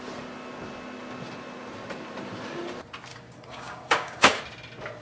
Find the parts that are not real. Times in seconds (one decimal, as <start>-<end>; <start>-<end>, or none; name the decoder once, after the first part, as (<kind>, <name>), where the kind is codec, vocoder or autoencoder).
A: 3.1-4.4 (codec, DAC)